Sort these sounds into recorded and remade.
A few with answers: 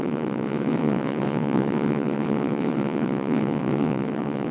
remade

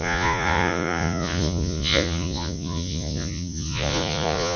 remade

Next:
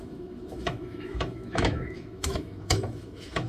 remade